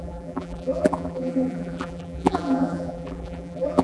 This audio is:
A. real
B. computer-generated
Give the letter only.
B